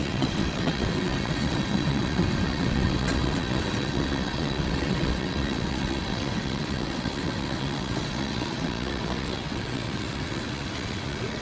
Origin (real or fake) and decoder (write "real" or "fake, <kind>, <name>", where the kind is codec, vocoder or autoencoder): fake, vocoder, WaveNeXt